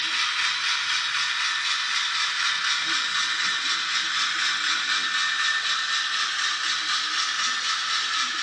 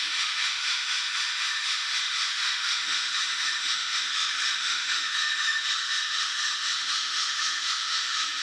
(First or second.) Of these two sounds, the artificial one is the second